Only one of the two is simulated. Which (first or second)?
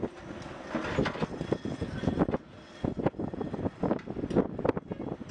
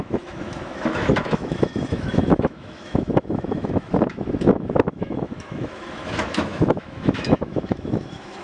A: second